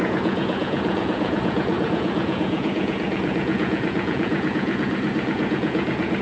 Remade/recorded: remade